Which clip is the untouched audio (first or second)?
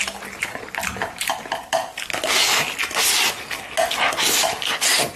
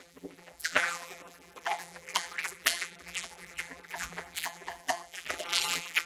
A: first